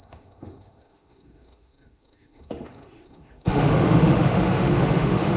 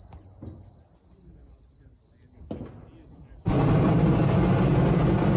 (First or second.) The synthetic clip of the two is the first